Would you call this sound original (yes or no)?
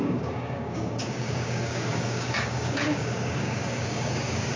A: no